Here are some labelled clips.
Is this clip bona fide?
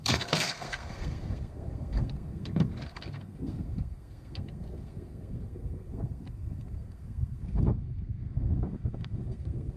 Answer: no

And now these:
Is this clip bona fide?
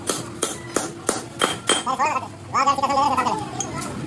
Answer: yes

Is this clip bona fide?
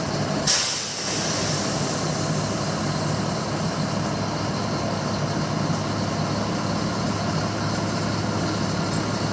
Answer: yes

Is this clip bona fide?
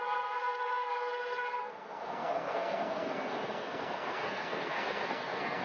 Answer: no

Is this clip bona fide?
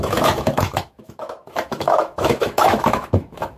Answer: no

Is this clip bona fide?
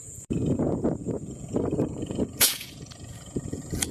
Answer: no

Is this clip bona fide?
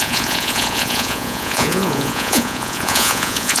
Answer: no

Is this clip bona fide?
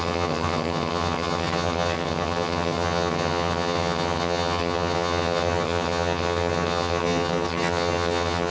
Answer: no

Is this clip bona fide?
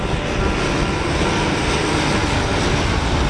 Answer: yes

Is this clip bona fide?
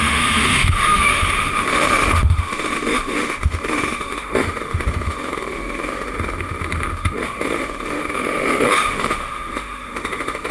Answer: no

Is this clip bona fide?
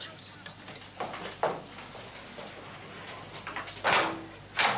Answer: yes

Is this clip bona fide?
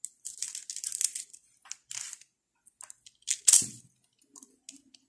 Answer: yes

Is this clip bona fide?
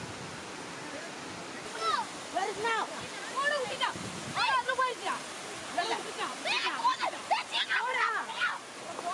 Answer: yes